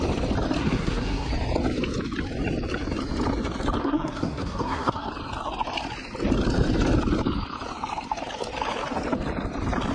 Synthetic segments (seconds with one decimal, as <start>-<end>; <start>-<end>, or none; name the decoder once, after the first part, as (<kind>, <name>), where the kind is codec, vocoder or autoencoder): 0.6-1.3 (codec, SNAC); 3.8-5.1